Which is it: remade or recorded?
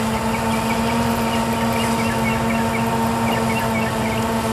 recorded